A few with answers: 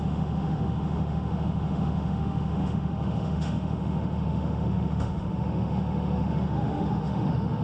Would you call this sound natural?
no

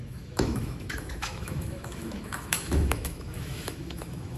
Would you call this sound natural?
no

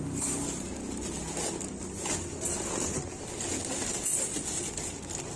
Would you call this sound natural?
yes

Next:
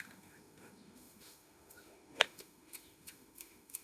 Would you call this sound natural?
no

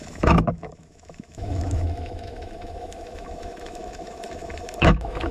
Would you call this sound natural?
no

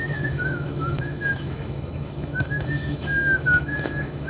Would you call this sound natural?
no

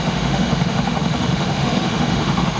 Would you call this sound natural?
no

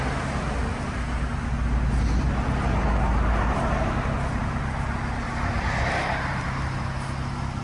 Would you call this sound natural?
yes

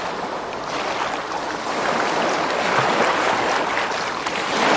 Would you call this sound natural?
yes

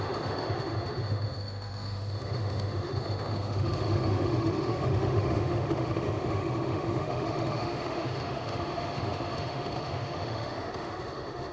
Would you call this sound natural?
no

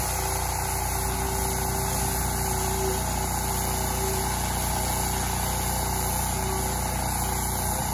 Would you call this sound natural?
yes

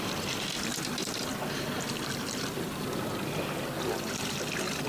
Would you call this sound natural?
yes